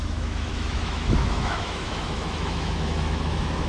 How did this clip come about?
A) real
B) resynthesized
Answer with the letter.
B